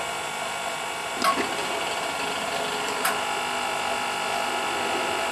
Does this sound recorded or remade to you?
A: recorded